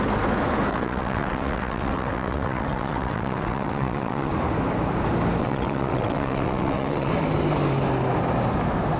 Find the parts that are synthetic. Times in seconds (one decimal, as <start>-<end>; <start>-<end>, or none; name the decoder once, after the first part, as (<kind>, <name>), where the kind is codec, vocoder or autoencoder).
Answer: 0.7-4.3 (vocoder, WaveNeXt); 5.4-7.1